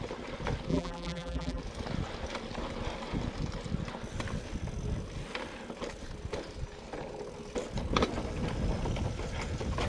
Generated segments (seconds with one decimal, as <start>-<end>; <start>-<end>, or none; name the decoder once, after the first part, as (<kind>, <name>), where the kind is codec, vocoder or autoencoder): 0.7-1.6 (vocoder, BigVGAN v2)